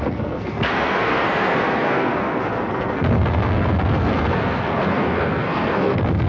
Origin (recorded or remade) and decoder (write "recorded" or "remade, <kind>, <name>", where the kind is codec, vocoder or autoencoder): remade, codec, SNAC